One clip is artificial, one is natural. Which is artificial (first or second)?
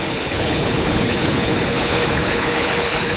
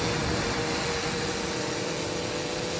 first